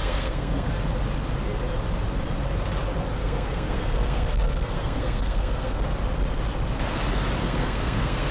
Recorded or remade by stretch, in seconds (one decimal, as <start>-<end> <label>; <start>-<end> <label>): 0.0-0.7 remade; 0.7-3.2 recorded; 3.2-5.8 remade; 5.8-7.4 recorded; 7.4-8.3 remade